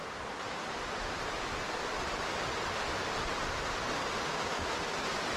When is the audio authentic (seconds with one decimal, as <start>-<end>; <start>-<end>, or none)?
0.0-3.0; 3.7-5.4